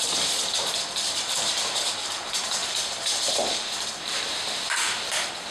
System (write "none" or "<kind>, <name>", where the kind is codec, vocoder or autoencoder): vocoder, BigVGAN v2